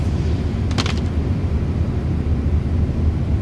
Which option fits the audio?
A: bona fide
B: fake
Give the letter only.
A